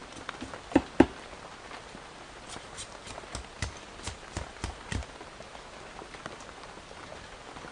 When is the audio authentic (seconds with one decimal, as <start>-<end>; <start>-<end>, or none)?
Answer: 0.0-7.7